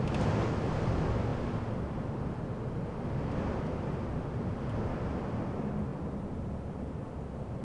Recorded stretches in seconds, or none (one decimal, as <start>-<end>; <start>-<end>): 0.0-7.6

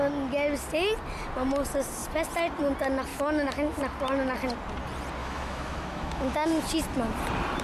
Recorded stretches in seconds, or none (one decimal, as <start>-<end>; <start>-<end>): 0.0-3.1; 3.8-5.2; 6.5-7.6

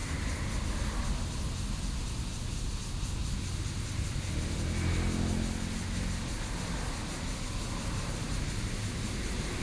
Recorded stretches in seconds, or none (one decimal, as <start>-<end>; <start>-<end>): 0.0-9.6

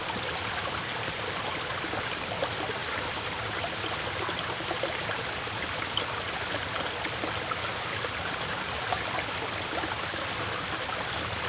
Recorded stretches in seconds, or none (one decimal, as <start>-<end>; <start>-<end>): 0.0-11.5

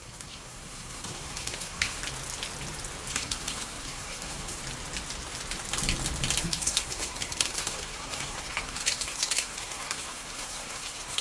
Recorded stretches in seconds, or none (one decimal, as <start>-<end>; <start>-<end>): 2.0-3.1; 4.6-6.4

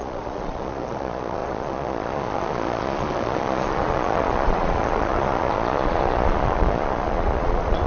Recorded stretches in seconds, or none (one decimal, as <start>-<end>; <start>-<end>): none